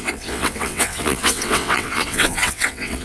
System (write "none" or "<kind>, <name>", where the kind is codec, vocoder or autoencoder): vocoder, WaveNeXt